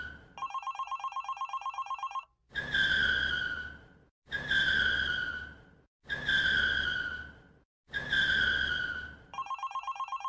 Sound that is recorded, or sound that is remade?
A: recorded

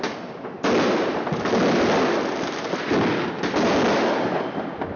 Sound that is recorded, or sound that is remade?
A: recorded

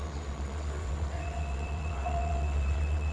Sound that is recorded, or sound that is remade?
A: remade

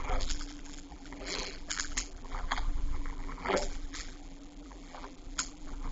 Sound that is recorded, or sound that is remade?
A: remade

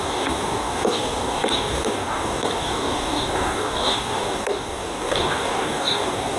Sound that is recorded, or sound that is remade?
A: remade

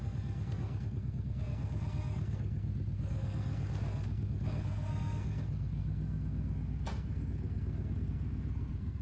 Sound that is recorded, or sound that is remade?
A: remade